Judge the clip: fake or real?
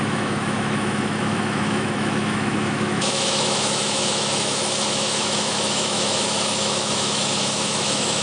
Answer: fake